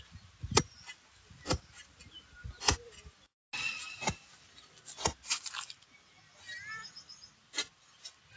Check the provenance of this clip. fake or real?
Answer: real